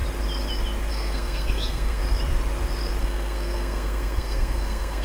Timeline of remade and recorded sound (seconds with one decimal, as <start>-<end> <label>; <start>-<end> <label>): 0.0-0.9 recorded; 0.9-2.0 remade; 2.0-3.0 recorded; 3.0-5.0 remade